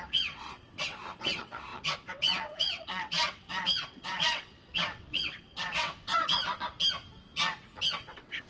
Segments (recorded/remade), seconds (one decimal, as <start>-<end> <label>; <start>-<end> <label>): 0.0-6.4 remade; 6.4-8.0 recorded; 8.0-8.5 remade

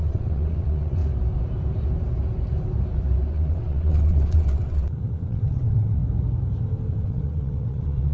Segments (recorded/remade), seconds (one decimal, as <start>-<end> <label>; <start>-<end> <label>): 0.0-1.0 remade; 1.0-3.3 recorded; 3.3-6.0 remade; 6.0-6.9 recorded; 6.9-8.1 remade